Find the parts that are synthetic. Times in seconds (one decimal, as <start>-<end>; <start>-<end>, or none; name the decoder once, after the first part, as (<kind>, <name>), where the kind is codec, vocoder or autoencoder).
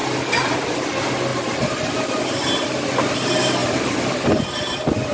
0.0-0.6 (vocoder, BigVGAN v2); 1.3-2.2; 3.6-4.4